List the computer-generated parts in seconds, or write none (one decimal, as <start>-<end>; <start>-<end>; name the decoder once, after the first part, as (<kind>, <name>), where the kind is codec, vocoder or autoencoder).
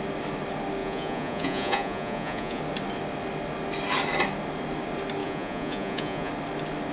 0.8-2.6 (vocoder, Vocos); 5.2-6.3